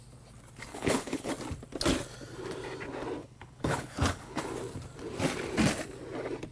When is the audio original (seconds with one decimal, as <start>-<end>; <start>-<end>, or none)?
0.0-0.7; 1.3-3.2; 4.4-6.5